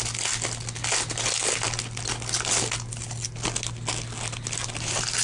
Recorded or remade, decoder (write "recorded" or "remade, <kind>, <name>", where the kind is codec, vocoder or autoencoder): recorded